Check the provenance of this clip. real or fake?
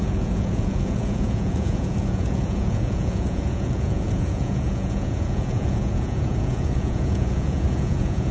fake